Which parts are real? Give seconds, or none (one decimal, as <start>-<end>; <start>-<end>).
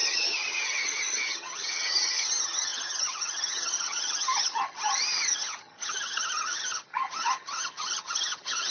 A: none